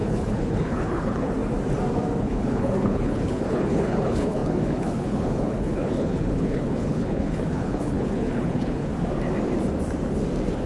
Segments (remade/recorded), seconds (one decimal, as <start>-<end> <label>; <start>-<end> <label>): 0.0-1.4 remade; 1.4-2.2 recorded; 2.2-8.9 remade; 8.9-10.7 recorded